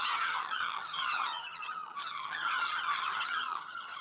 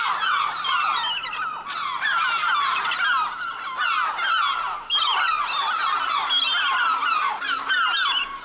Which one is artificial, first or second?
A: first